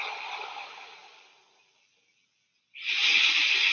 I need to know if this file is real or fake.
real